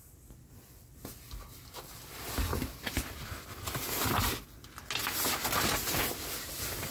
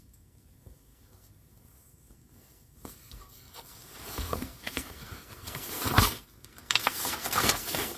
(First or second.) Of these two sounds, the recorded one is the first